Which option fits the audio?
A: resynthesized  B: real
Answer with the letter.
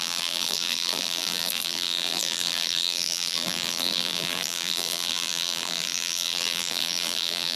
A